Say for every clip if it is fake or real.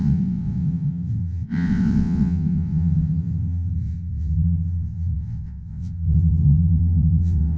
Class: fake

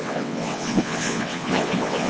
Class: fake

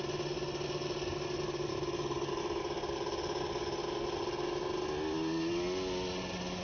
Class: real